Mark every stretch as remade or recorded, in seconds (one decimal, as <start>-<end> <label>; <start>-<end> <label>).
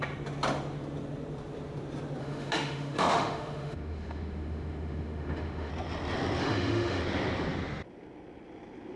0.0-2.2 recorded; 2.2-5.7 remade; 5.7-6.4 recorded; 6.4-7.0 remade; 7.0-9.0 recorded